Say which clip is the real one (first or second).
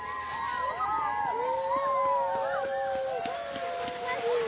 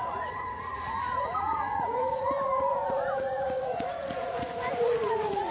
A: first